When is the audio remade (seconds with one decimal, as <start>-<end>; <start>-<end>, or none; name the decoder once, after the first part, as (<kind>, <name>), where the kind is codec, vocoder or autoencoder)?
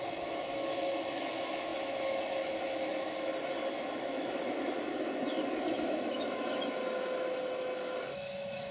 0.0-8.7 (autoencoder, DAC-VAE)